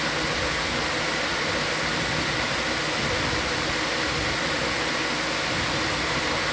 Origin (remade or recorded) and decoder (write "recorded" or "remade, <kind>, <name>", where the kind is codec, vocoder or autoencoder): recorded